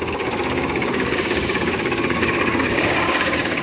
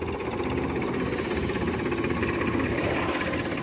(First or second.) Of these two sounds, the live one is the second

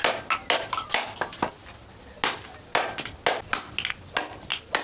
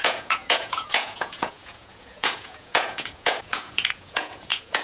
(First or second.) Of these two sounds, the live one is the first